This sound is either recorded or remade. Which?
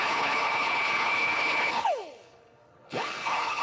remade